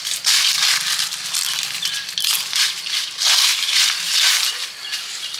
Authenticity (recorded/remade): recorded